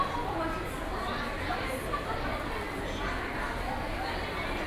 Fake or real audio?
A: real